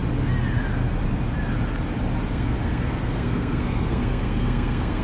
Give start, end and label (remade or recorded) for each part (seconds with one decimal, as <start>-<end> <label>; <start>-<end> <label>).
0.0-2.3 recorded; 2.3-5.0 remade

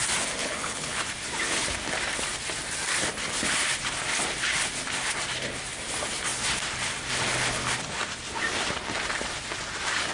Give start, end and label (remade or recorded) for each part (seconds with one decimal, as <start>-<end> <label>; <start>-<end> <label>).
0.0-0.4 recorded; 0.4-1.0 remade; 1.0-10.1 recorded

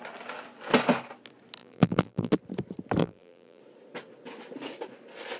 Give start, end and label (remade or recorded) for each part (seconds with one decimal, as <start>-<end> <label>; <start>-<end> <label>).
0.0-1.6 recorded; 1.6-2.3 remade; 2.3-3.0 recorded; 3.0-3.6 remade; 3.6-5.4 recorded

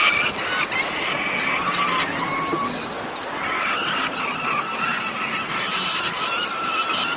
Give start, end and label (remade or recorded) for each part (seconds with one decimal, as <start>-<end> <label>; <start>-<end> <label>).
0.0-7.2 recorded